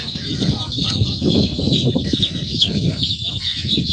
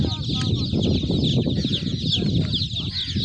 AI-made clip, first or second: first